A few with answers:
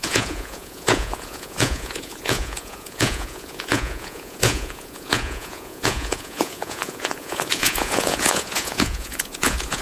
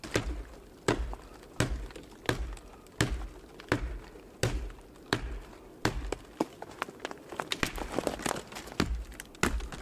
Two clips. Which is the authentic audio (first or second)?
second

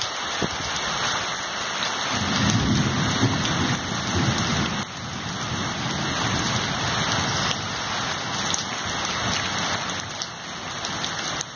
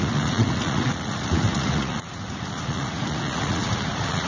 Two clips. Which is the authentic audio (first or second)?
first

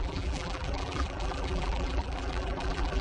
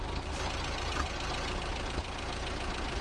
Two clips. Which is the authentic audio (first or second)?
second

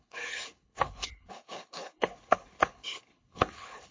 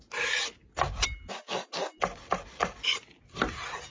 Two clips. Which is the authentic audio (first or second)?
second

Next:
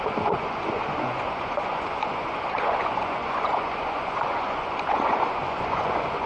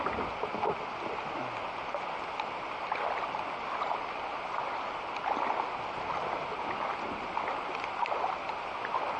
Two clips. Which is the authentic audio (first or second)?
second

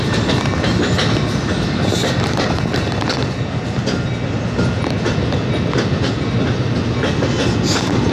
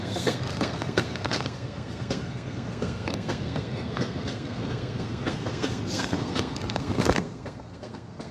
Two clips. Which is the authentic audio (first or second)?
first